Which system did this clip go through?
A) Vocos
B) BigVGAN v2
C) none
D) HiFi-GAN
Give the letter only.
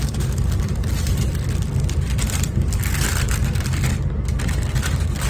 B